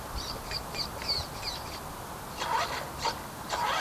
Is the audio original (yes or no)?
yes